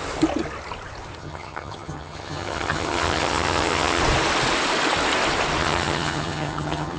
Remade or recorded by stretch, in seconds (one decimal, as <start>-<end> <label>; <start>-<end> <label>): 0.0-1.2 recorded; 1.2-4.0 remade; 4.0-5.6 recorded; 5.6-7.0 remade